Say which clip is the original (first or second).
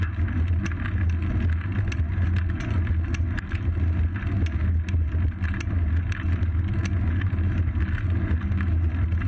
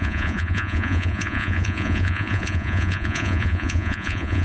first